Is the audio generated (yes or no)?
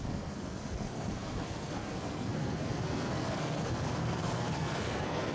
yes